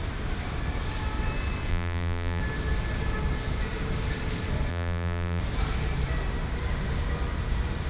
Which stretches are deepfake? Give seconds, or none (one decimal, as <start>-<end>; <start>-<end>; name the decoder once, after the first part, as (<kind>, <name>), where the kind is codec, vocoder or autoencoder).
1.7-2.4 (vocoder, BigVGAN v2); 4.7-5.4